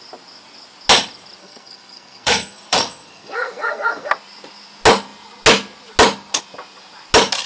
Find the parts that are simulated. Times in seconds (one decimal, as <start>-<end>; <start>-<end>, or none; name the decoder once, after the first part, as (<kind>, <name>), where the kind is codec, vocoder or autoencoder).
1.4-4.1 (codec, SNAC)